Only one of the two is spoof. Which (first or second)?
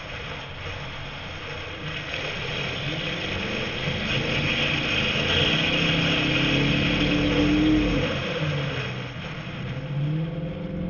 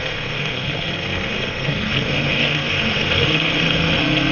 second